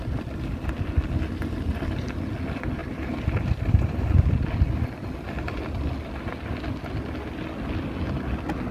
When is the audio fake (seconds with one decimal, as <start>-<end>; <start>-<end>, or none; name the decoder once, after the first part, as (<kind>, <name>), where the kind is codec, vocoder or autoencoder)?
2.8-4.0 (vocoder, BigVGAN v2)